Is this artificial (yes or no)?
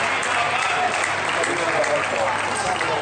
no